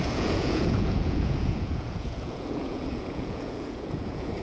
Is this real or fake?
fake